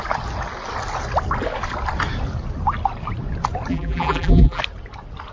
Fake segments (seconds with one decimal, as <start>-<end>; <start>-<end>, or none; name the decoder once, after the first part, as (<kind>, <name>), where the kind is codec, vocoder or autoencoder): 3.7-4.6 (vocoder, BigVGAN v2)